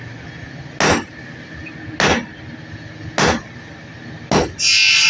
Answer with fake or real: real